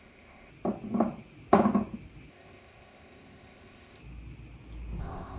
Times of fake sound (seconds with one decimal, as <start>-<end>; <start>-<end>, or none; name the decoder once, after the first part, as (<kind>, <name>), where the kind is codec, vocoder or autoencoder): 0.0-0.5 (codec, ZipCodec); 2.3-4.0; 5.0-5.4